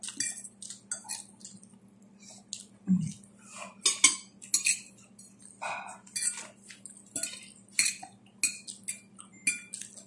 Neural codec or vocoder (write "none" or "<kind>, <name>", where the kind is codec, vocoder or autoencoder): none